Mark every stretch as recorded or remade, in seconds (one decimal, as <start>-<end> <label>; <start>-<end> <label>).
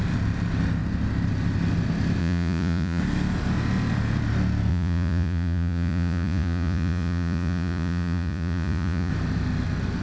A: 0.0-2.2 recorded; 2.2-3.0 remade; 3.0-4.7 recorded; 4.7-9.1 remade; 9.1-10.0 recorded